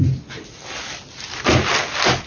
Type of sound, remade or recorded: recorded